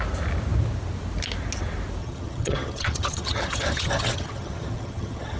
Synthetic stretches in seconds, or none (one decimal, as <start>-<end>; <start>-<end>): 2.0-5.4